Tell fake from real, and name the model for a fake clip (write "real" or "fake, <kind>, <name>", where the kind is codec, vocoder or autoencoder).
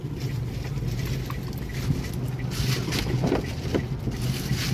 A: real